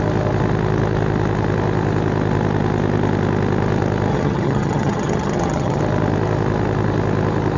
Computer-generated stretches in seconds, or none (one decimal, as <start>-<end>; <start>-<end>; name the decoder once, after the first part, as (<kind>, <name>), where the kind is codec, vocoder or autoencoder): 4.1-5.8 (vocoder, HiFi-GAN)